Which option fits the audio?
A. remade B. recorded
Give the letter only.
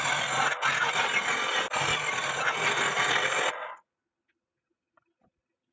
B